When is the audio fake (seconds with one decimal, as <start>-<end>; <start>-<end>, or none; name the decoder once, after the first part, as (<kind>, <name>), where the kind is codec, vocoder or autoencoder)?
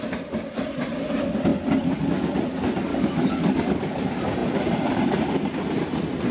2.9-4.0 (codec, DAC)